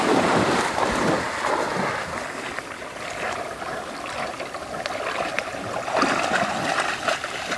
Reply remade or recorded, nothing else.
recorded